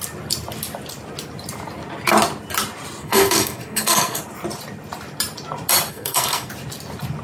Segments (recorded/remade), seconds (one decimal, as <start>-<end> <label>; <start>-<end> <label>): 0.0-3.0 recorded; 3.0-4.2 remade; 4.2-5.9 recorded; 5.9-6.5 remade; 6.5-7.2 recorded